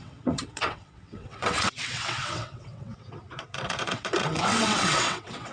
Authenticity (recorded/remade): remade